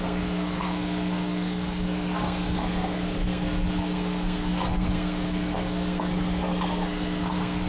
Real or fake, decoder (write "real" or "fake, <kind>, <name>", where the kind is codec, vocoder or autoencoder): fake, codec, SNAC